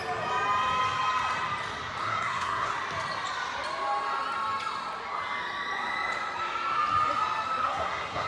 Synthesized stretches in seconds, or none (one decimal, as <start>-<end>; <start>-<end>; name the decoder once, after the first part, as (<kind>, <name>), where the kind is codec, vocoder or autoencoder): 2.0-2.7 (codec, SNAC); 7.6-8.3